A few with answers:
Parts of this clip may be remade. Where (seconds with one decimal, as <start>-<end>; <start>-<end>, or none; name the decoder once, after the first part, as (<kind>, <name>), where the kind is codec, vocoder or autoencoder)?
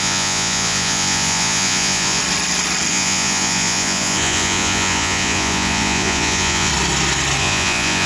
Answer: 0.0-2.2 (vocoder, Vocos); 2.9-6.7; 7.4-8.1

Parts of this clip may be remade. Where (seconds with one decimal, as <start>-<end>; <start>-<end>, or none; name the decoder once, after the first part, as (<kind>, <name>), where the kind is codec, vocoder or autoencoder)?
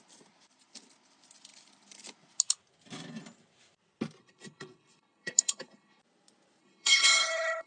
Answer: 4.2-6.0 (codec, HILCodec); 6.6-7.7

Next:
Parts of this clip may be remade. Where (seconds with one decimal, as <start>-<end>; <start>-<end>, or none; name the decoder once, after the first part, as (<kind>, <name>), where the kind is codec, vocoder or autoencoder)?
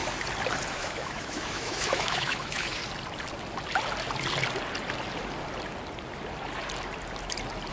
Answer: 0.7-2.8 (autoencoder, DAC-VAE)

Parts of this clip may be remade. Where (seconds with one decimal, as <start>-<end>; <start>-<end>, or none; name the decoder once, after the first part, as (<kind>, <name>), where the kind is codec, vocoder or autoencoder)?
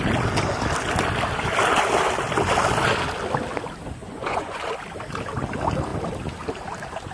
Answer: 4.0-4.6 (vocoder, Vocos)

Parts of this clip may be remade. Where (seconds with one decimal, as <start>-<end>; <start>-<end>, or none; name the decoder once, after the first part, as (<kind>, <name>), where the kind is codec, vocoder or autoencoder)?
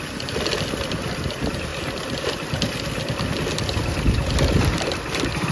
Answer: none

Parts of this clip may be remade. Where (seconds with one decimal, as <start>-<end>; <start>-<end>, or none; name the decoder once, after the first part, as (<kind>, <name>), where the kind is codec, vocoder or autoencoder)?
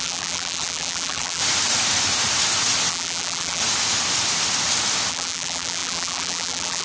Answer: 0.0-1.4 (vocoder, BigVGAN v2); 2.9-3.6; 5.1-6.8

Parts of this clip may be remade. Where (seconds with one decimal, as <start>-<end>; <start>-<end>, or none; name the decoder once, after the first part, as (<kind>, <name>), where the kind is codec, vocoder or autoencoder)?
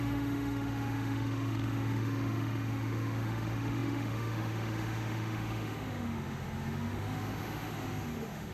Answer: 0.0-8.5 (autoencoder, DAC-VAE)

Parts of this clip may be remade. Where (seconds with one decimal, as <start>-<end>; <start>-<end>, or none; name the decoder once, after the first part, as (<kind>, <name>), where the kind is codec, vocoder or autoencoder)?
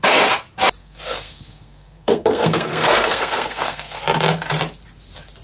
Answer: 0.8-4.0 (codec, SNAC)